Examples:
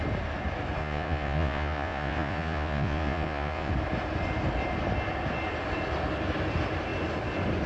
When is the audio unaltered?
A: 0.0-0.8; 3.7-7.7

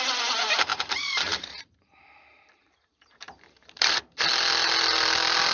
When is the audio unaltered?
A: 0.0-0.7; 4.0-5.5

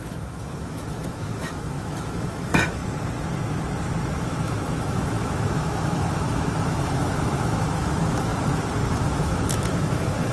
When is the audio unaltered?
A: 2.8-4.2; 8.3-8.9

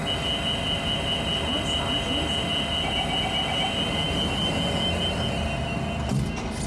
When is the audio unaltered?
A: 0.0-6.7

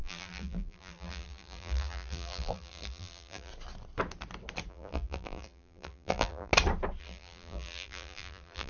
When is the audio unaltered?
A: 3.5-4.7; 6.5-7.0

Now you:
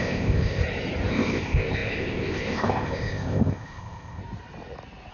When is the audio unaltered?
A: 0.6-1.1; 4.2-5.1

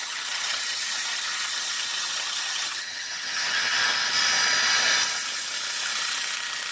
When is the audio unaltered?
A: 3.8-6.7

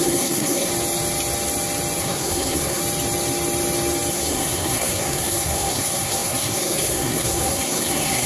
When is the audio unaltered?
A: 0.7-2.0; 2.8-4.1